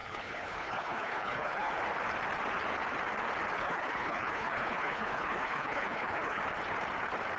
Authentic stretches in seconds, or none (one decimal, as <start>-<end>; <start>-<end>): 1.7-3.6; 6.4-7.4